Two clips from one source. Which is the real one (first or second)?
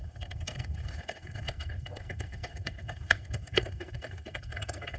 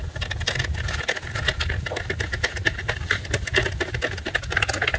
second